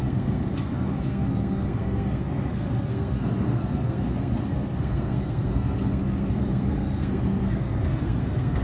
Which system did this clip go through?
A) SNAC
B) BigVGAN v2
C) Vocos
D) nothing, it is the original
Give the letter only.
A